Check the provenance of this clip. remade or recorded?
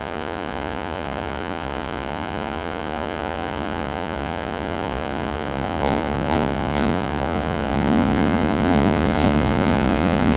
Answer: remade